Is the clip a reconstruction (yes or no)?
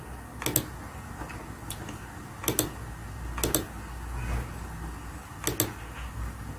no